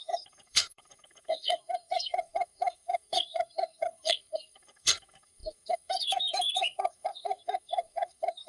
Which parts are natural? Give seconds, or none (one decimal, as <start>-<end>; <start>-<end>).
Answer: none